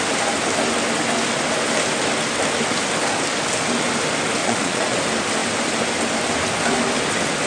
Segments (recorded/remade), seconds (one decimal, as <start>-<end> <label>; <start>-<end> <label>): 0.0-4.4 recorded; 4.4-5.0 remade; 5.0-7.5 recorded